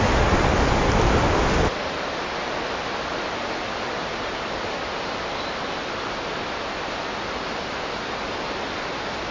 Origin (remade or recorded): recorded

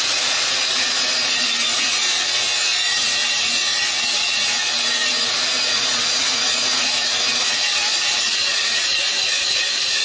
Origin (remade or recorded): remade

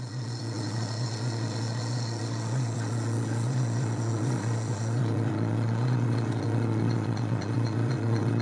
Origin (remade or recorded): remade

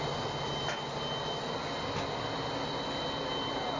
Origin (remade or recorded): recorded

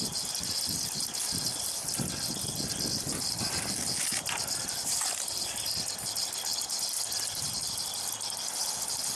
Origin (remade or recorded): recorded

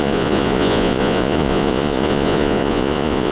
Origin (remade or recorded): remade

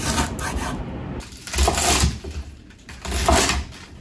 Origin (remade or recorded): recorded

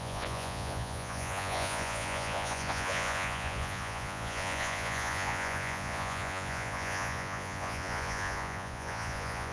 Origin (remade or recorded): remade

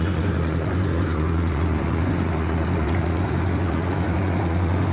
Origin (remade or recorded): remade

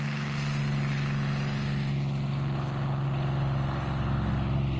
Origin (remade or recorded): recorded